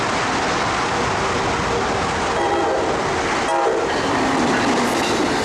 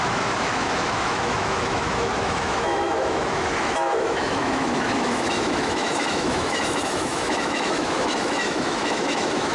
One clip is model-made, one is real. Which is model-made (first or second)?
second